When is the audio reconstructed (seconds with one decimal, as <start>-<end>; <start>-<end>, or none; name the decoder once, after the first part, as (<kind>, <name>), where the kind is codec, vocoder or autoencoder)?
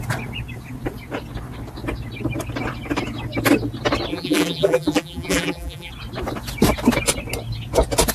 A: 4.1-5.9 (vocoder, BigVGAN v2)